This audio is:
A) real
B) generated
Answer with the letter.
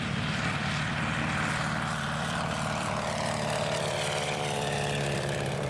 B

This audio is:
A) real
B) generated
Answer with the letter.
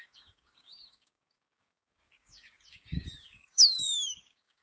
B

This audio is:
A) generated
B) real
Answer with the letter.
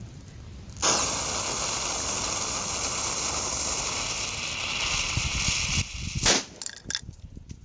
B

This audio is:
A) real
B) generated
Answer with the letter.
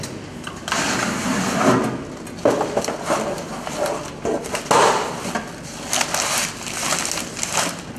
A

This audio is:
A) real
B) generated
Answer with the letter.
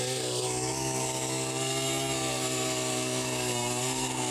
B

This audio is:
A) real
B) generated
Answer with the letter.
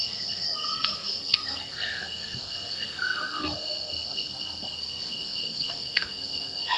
B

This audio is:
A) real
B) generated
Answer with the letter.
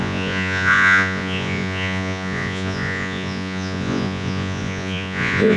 B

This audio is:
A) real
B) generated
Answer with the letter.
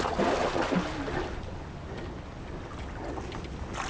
A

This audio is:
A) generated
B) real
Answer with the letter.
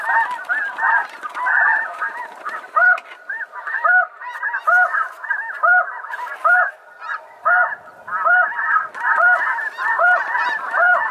B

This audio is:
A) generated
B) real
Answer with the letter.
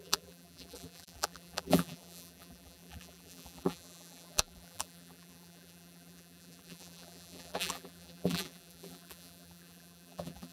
A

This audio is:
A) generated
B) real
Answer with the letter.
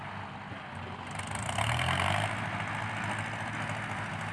B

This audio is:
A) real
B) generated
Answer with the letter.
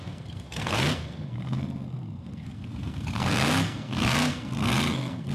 B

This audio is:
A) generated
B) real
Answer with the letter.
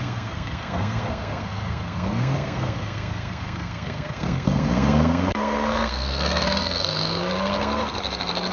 A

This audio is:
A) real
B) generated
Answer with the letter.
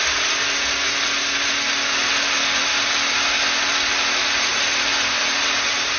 A